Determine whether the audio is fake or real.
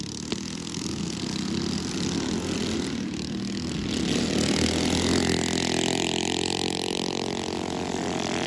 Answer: real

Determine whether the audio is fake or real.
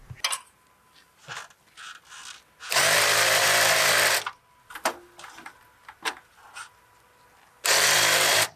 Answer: real